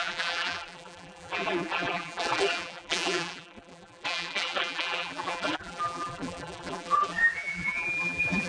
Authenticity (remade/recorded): remade